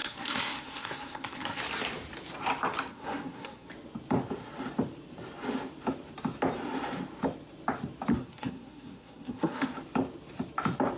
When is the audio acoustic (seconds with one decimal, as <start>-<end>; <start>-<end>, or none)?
1.6-2.9; 3.7-8.1; 9.7-11.0